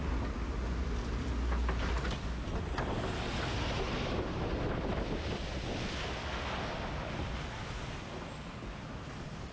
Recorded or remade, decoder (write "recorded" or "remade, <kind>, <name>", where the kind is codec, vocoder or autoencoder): recorded